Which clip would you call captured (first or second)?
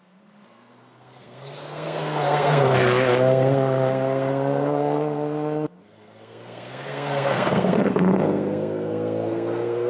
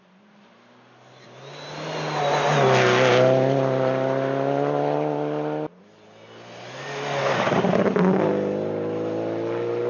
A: second